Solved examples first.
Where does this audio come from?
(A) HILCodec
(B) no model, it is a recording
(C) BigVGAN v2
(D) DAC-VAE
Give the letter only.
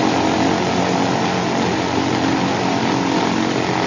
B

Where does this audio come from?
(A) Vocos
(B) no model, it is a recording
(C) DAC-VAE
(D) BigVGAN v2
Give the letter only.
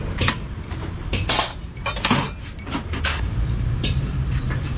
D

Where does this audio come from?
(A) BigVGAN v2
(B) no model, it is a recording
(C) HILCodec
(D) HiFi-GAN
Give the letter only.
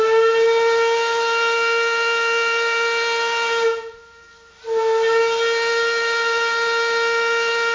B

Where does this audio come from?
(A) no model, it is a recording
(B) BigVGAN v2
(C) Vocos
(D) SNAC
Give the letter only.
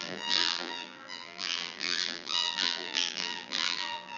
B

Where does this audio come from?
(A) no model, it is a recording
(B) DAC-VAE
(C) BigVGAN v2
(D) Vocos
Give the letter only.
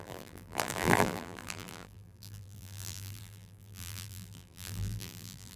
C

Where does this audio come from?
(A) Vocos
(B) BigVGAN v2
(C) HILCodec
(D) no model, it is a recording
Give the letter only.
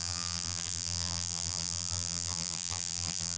B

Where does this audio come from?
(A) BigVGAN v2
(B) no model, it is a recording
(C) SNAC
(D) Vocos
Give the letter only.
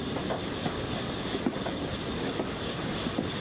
B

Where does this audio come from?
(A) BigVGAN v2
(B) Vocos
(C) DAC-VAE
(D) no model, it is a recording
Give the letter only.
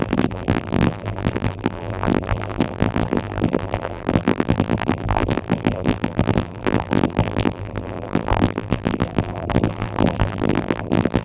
A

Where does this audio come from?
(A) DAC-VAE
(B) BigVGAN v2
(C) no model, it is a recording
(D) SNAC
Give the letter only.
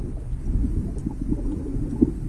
C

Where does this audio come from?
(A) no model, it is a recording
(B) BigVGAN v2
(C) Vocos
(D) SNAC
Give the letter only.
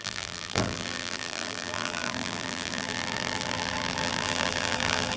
B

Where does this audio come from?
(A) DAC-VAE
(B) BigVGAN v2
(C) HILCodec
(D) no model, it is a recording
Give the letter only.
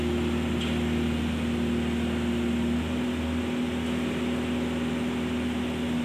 D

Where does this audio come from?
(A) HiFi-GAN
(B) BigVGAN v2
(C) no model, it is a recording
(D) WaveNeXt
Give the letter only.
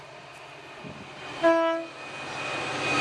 C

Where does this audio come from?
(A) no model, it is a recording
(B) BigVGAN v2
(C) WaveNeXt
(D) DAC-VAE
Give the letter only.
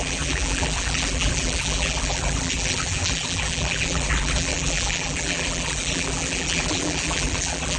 B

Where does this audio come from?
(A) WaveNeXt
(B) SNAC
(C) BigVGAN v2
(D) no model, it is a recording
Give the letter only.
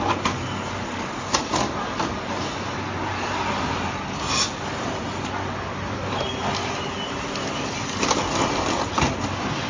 D